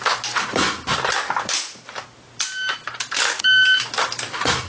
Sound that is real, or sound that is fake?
real